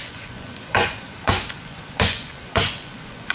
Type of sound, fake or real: fake